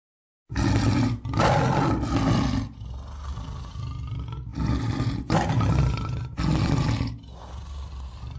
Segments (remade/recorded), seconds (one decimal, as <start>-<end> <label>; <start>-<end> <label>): 0.0-8.4 recorded